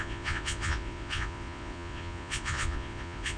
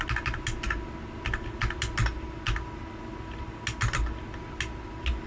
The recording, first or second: second